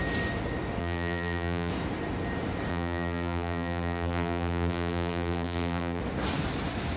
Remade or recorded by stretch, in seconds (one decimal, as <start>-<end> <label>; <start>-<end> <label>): 0.0-0.8 recorded; 0.8-1.7 remade; 1.7-2.7 recorded; 2.7-6.0 remade; 6.0-7.0 recorded